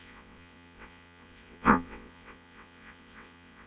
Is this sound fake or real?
fake